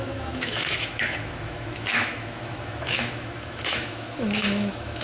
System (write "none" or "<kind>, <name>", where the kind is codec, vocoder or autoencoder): autoencoder, DAC-VAE